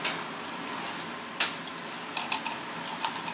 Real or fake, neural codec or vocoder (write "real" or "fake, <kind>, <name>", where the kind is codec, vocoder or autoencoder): real